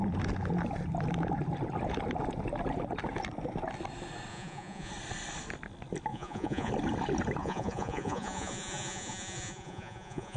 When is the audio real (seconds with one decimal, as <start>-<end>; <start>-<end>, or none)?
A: 0.0-4.3; 4.9-6.1; 6.7-7.4